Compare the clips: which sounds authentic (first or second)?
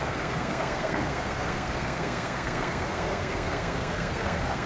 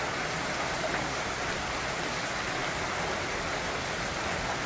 second